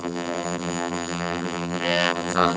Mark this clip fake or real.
fake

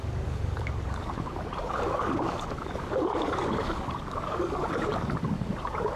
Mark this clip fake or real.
fake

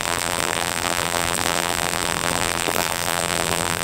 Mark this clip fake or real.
fake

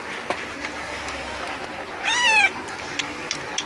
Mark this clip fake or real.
real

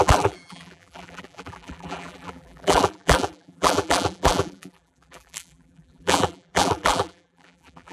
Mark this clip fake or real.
fake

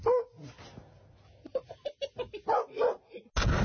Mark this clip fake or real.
real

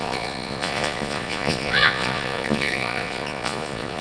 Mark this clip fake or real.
fake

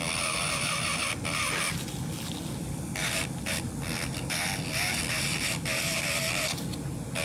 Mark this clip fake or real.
real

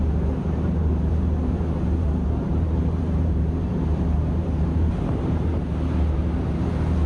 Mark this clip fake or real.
fake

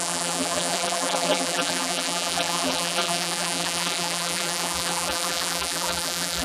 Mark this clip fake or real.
fake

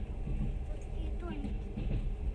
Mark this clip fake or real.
real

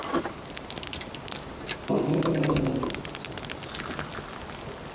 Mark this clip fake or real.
real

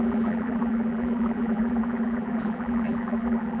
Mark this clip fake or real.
fake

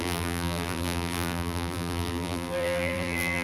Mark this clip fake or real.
fake